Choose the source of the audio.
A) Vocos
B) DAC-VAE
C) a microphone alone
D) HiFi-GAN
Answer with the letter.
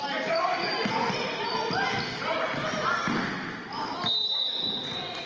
C